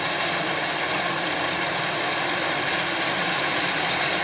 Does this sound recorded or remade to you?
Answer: recorded